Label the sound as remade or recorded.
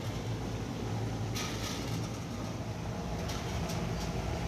recorded